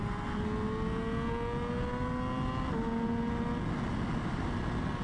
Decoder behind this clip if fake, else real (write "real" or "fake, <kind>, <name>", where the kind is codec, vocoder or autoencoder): real